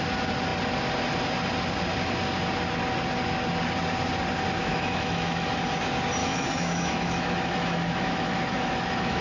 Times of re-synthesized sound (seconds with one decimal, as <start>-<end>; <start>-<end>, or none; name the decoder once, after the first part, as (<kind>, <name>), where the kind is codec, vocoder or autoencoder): 4.6-5.5 (autoencoder, DAC-VAE); 6.2-9.2